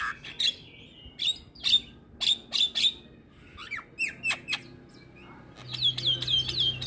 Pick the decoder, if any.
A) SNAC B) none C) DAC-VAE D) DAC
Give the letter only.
B